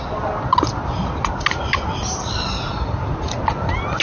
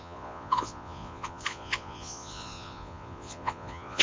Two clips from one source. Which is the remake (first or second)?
second